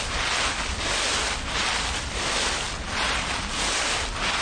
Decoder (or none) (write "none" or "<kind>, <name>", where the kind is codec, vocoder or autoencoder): none